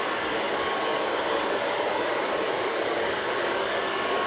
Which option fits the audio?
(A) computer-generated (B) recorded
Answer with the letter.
A